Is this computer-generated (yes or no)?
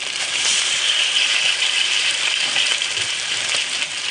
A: yes